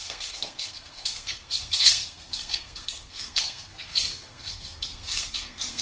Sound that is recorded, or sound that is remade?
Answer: remade